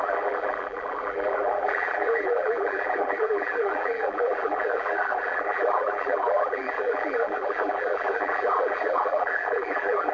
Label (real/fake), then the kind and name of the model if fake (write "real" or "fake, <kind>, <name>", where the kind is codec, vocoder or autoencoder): fake, vocoder, BigVGAN v2